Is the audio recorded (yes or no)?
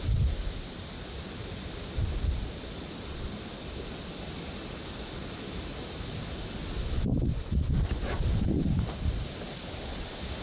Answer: yes